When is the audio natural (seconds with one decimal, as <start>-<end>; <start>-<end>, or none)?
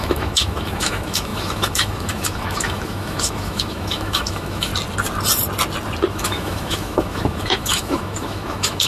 4.7-6.1